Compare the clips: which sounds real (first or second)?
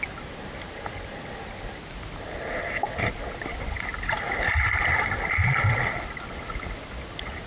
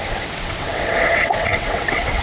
first